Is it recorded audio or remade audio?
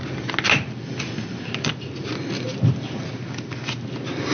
recorded